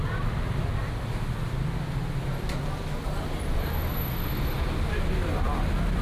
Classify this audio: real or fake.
real